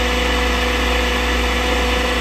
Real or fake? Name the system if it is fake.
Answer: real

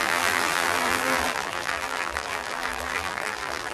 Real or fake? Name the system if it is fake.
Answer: fake, vocoder, BigVGAN v2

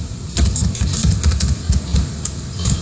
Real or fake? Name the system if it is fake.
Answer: real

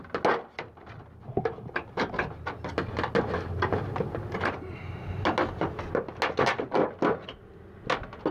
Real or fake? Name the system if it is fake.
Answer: real